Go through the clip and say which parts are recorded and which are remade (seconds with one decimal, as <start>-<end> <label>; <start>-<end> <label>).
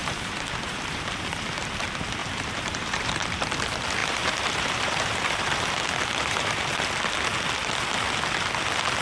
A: 0.0-1.7 remade; 1.7-2.2 recorded; 2.2-3.1 remade; 3.1-4.0 recorded; 4.0-6.6 remade; 6.6-9.0 recorded